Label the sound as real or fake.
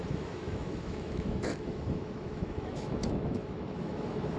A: fake